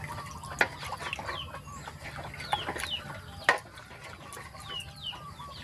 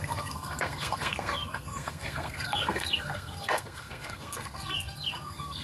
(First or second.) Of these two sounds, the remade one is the second